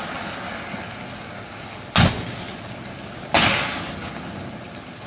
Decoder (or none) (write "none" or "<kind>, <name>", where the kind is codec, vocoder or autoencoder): none